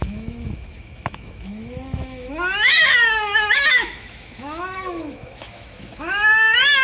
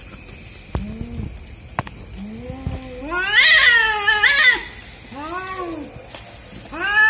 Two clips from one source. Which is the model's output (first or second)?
first